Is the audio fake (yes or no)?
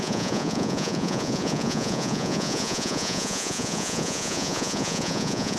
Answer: yes